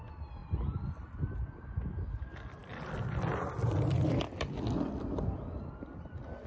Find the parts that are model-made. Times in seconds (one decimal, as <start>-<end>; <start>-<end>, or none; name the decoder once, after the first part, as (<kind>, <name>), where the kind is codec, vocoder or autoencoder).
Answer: none